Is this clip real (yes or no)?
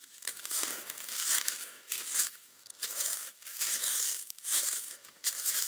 no